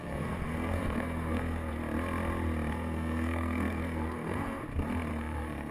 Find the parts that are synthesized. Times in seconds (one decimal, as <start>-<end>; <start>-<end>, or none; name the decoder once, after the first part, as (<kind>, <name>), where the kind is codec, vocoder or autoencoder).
0.0-1.8 (codec, SNAC); 2.7-4.6; 5.1-5.7